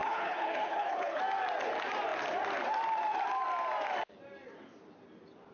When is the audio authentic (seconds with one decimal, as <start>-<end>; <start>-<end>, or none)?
1.2-5.5